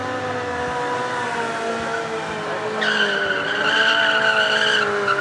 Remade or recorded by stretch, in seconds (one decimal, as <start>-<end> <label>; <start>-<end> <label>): 0.0-5.2 recorded